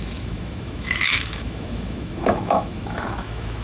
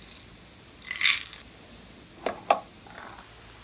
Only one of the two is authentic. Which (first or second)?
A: second